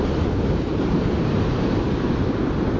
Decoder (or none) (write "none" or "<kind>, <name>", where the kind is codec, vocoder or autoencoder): none